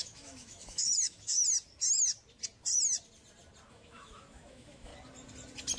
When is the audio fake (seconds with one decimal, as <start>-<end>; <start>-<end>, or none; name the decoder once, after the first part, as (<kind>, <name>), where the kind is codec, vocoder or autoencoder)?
0.0-1.4 (autoencoder, DAC-VAE); 3.7-4.9

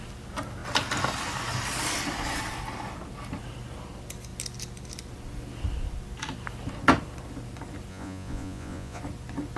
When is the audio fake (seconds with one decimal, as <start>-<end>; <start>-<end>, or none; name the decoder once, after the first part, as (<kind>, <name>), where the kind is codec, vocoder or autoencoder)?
7.9-9.0 (vocoder, Vocos)

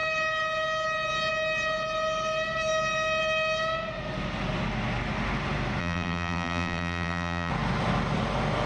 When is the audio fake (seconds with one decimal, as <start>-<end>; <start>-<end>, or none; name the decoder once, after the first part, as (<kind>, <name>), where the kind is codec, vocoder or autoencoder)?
5.8-7.5 (vocoder, BigVGAN v2)